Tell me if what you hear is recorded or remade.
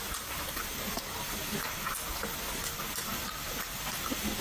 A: recorded